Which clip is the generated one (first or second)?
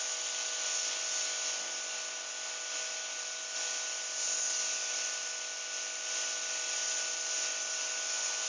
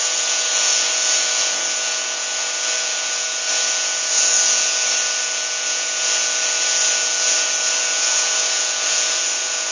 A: second